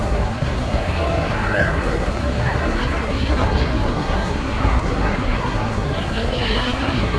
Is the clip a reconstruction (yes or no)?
yes